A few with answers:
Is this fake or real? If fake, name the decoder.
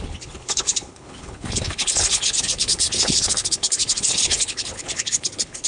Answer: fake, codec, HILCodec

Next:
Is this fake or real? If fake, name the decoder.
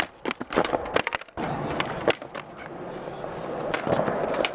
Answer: real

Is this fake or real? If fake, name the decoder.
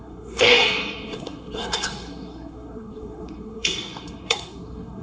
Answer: fake, codec, SNAC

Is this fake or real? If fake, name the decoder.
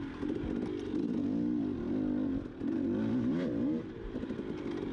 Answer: real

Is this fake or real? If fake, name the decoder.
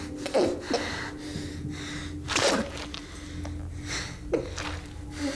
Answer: real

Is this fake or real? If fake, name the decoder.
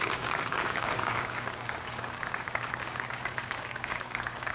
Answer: fake, codec, DAC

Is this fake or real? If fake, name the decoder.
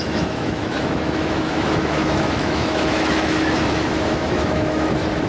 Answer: fake, autoencoder, DAC-VAE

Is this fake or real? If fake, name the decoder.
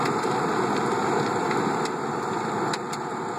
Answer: real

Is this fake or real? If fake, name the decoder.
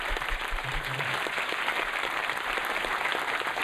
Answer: fake, vocoder, BigVGAN v2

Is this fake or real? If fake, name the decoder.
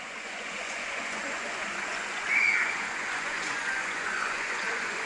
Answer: fake, vocoder, Vocos